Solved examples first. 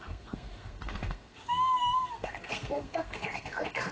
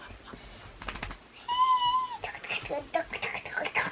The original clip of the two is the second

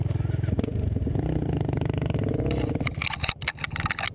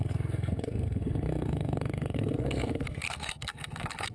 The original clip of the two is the first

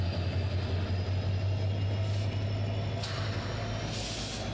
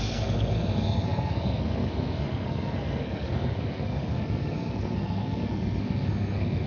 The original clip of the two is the first